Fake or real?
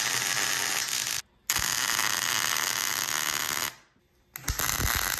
real